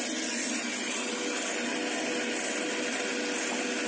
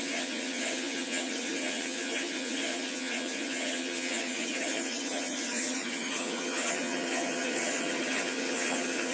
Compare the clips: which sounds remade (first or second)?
second